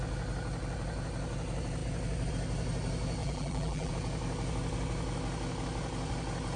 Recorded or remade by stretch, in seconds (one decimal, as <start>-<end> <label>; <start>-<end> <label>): 0.0-3.2 recorded; 3.2-3.9 remade; 3.9-6.6 recorded